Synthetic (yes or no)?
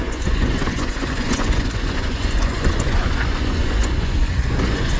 yes